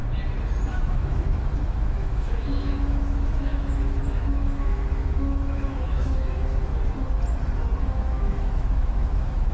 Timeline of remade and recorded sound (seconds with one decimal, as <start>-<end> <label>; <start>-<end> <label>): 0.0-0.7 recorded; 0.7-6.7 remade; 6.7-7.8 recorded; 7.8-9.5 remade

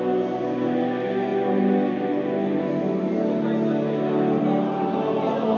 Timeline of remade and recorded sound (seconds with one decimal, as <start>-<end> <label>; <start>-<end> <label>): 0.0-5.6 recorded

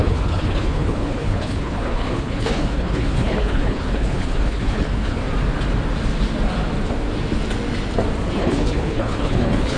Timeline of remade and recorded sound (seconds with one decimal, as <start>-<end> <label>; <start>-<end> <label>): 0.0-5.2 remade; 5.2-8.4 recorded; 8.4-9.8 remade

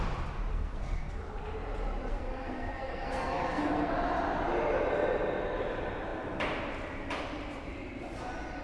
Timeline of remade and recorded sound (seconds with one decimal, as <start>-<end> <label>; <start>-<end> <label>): 0.0-0.5 recorded; 0.5-1.2 remade; 1.2-2.1 recorded; 2.1-3.9 remade; 3.9-8.6 recorded

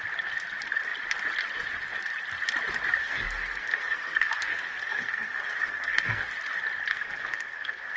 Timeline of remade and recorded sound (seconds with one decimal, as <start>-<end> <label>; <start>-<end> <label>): 0.0-3.0 recorded; 3.0-6.3 remade; 6.3-6.9 recorded; 6.9-8.0 remade

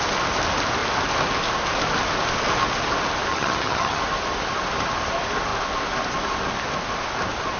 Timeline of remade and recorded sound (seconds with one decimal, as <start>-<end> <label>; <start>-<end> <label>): 0.0-3.3 recorded; 3.3-4.0 remade; 4.0-7.6 recorded